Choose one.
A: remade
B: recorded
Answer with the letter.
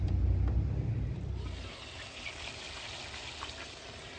B